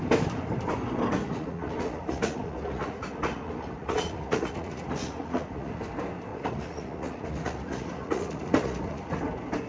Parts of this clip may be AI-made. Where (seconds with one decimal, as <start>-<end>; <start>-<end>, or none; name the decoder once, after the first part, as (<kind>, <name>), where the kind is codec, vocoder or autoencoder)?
1.2-5.8 (vocoder, Vocos); 6.3-9.2